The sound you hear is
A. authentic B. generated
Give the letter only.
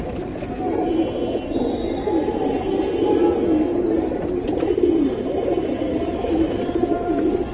A